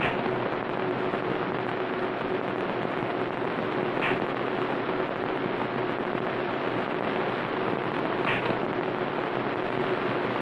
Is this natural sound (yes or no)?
yes